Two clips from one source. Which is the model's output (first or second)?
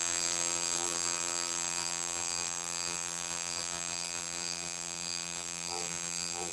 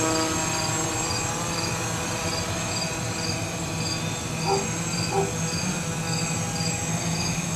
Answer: first